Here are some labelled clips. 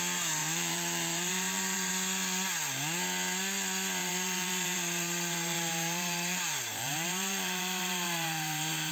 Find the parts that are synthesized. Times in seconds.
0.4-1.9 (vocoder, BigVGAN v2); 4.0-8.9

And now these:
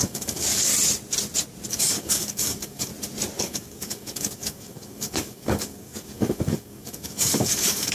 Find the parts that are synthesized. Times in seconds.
0.0-0.7 (codec, DAC); 1.7-2.9; 3.4-7.9

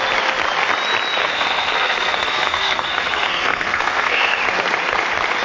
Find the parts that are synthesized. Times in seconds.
1.2-4.4 (codec, SNAC)